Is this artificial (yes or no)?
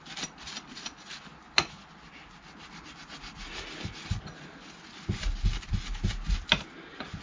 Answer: no